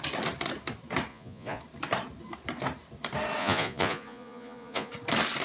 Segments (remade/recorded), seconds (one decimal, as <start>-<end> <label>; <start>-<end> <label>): 0.0-1.1 recorded; 1.1-1.6 remade; 1.6-3.4 recorded; 3.4-4.9 remade; 4.9-5.4 recorded